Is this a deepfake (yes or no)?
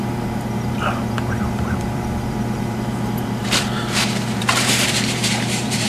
yes